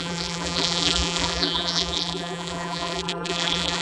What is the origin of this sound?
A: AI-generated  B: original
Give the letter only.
A